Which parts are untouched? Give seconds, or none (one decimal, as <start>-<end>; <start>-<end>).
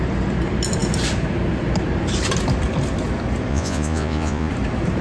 0.0-3.5; 4.5-5.0